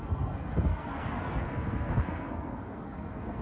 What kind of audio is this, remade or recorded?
remade